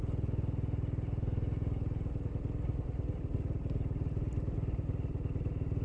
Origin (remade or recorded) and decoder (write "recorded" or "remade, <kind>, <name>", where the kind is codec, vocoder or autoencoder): recorded